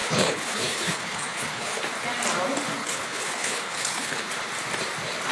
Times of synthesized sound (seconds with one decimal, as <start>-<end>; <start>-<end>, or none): 0.0-1.8; 2.8-4.3